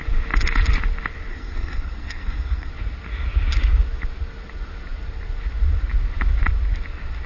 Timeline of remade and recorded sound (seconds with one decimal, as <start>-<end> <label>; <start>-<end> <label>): 0.0-1.3 recorded; 1.3-2.7 remade; 2.7-7.3 recorded